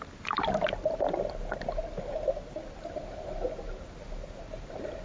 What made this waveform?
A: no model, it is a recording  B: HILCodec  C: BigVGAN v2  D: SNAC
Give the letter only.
A